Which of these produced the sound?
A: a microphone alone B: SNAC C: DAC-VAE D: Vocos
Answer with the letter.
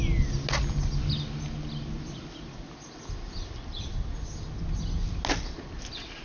A